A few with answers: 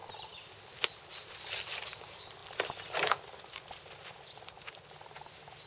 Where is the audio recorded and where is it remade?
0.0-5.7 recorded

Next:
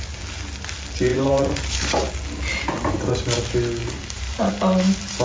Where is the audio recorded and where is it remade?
0.0-1.1 recorded; 1.1-2.1 remade; 2.1-2.5 recorded; 2.5-3.1 remade; 3.1-3.8 recorded; 3.8-4.5 remade; 4.5-5.2 recorded